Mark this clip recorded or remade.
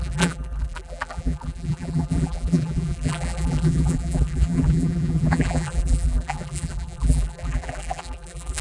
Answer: remade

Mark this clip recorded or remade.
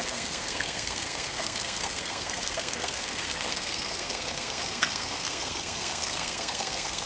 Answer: remade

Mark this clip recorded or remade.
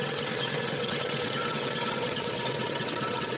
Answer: remade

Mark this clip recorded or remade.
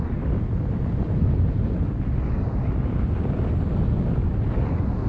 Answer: recorded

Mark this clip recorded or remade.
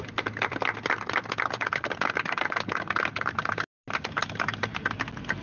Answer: recorded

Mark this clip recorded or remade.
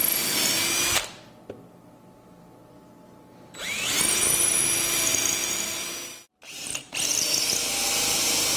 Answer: recorded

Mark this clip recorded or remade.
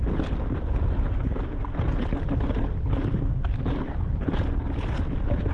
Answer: recorded